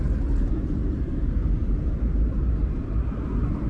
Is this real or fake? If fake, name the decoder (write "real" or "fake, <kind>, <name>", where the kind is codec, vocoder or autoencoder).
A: fake, vocoder, BigVGAN v2